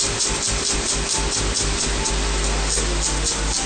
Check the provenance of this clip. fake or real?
real